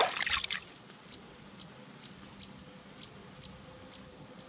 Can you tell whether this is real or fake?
real